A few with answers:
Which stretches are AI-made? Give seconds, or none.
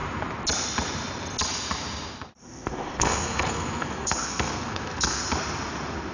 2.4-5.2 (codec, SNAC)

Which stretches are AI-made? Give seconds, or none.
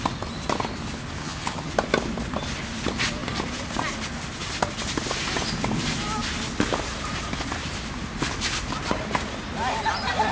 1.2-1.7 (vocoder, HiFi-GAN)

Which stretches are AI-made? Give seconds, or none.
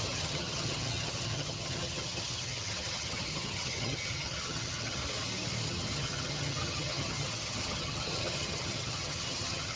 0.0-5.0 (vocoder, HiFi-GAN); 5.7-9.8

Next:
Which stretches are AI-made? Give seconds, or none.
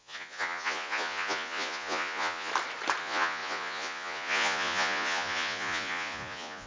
0.0-2.5 (vocoder, Vocos); 3.0-6.7